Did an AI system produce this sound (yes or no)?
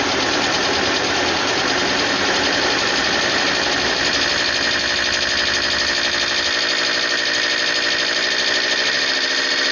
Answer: no